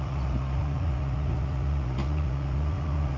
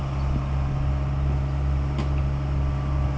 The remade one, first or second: first